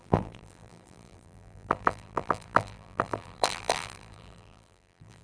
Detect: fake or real fake